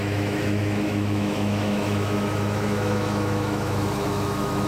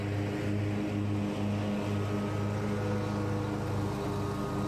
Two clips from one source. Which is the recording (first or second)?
second